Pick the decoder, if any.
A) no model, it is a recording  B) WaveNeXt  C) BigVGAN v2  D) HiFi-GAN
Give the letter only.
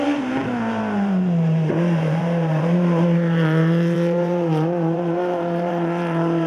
C